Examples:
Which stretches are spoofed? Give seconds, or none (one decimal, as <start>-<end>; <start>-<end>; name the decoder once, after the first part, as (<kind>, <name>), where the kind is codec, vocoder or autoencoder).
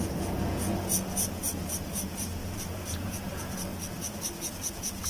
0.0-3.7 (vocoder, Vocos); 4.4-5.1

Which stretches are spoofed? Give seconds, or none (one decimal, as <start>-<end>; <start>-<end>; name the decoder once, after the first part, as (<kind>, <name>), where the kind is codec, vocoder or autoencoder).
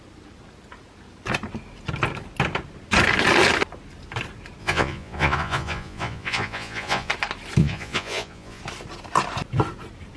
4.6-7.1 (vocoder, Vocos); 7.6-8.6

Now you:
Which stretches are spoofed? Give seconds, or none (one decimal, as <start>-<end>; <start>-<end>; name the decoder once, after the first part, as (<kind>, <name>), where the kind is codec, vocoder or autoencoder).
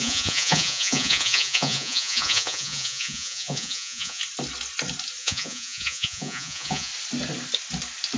0.0-4.2 (vocoder, Vocos); 5.2-6.9